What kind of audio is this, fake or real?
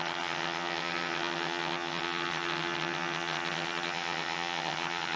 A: fake